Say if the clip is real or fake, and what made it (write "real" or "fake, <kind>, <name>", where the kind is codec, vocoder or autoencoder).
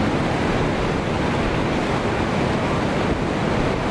real